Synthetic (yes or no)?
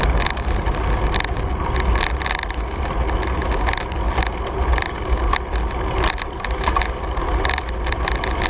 no